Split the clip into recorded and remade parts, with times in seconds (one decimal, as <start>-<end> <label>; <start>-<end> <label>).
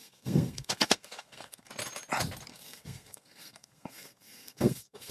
0.0-1.7 remade; 1.7-2.5 recorded; 2.5-5.1 remade